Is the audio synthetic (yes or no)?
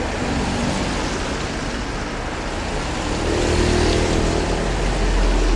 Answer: no